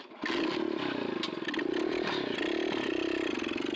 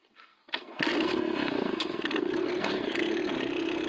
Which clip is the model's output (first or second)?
second